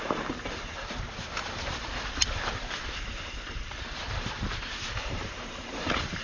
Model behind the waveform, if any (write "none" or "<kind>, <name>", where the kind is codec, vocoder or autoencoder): vocoder, BigVGAN v2